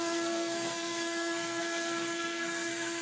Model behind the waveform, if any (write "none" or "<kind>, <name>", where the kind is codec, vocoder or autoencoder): codec, SNAC